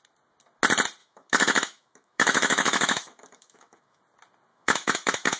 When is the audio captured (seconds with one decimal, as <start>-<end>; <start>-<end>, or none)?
0.0-1.0; 4.0-4.5